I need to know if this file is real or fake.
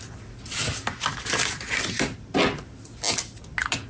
real